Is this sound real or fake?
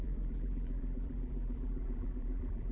fake